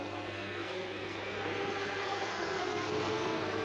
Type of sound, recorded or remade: remade